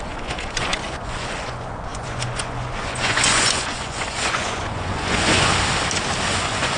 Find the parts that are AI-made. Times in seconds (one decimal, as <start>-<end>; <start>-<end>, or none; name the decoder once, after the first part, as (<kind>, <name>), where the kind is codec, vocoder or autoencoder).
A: 0.0-5.5 (vocoder, Vocos); 6.3-6.8